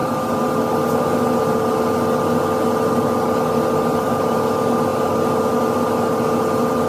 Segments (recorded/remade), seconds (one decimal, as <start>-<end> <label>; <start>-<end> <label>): 0.0-6.9 recorded